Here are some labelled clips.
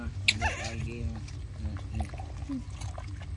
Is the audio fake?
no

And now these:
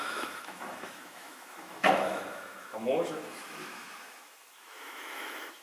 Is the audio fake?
yes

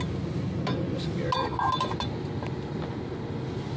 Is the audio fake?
no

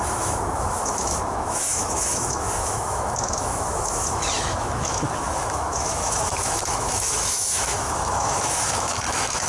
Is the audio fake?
yes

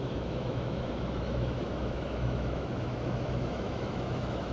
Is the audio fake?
yes